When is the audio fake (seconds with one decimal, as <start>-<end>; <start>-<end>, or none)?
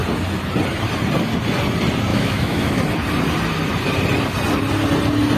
2.1-2.8